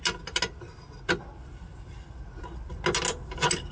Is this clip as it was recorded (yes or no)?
yes